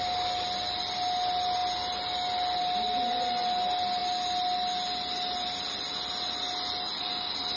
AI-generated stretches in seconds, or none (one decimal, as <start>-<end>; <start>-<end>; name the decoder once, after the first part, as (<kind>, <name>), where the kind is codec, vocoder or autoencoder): none